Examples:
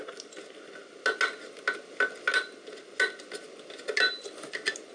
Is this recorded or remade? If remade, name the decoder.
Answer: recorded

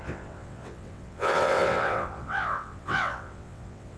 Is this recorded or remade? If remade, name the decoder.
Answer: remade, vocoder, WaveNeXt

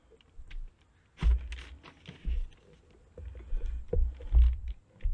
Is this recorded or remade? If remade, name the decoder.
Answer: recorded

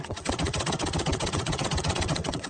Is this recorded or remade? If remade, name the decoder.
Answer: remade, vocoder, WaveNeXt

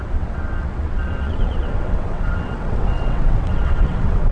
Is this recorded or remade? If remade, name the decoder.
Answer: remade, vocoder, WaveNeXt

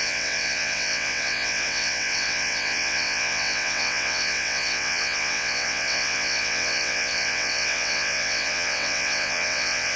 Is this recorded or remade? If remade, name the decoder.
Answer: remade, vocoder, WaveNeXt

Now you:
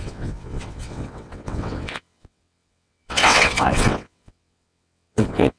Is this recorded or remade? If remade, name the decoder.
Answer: remade, vocoder, WaveNeXt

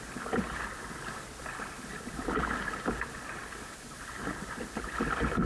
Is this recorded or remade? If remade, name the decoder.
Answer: recorded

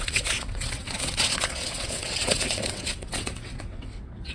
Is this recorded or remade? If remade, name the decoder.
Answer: remade, vocoder, WaveNeXt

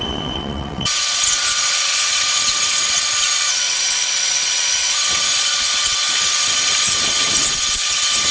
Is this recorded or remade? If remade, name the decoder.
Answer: remade, vocoder, WaveNeXt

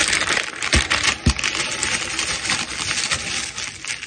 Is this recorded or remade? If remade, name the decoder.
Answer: recorded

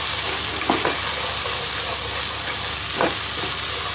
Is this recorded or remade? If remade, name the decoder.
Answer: recorded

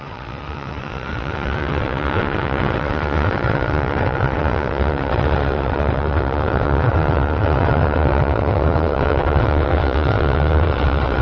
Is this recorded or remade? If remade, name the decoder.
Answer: remade, vocoder, WaveNeXt